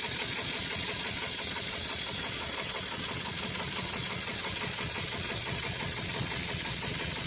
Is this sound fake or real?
fake